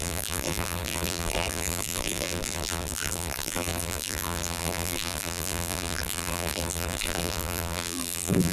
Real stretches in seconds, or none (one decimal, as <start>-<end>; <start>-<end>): none